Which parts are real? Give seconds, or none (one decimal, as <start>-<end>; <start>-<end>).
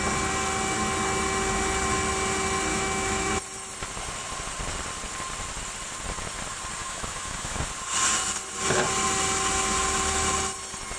0.0-2.7; 3.3-6.8; 7.6-11.0